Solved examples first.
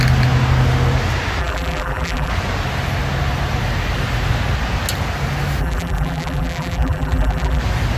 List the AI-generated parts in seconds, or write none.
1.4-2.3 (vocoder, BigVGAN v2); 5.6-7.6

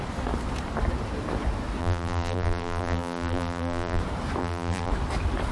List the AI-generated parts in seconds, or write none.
1.8-4.0 (vocoder, BigVGAN v2); 4.4-4.9